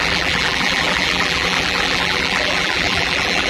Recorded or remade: remade